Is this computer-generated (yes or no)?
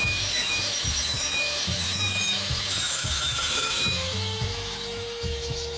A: yes